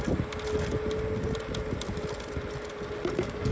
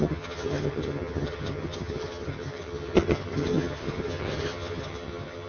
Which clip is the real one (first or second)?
first